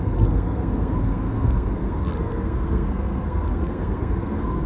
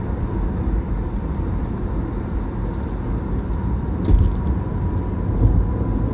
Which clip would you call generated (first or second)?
first